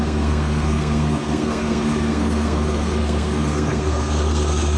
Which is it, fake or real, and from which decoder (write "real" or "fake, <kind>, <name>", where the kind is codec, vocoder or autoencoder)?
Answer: fake, codec, SNAC